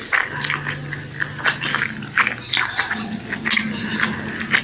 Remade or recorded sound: recorded